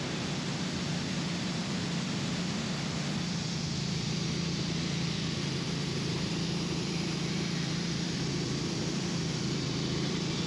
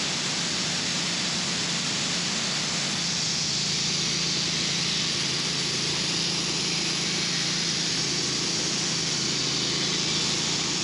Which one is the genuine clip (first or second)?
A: second